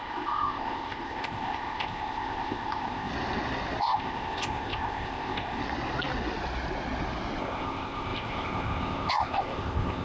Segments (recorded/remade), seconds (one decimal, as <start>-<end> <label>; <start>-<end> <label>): 0.0-3.1 remade; 3.1-3.8 recorded; 3.8-5.6 remade; 5.6-7.4 recorded; 7.4-10.0 remade